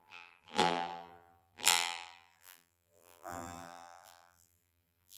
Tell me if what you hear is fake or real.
fake